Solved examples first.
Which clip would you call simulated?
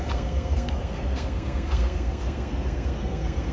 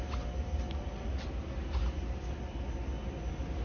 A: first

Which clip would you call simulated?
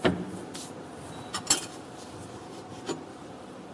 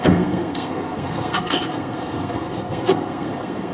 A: second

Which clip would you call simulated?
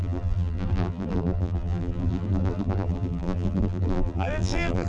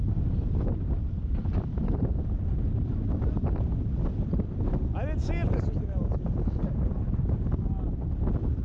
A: first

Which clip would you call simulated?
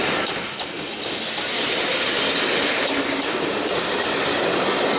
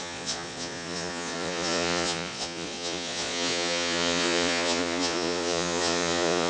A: second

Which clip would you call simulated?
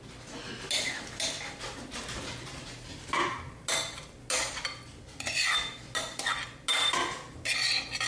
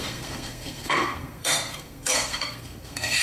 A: second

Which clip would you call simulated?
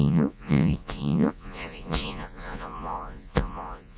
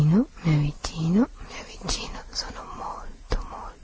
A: first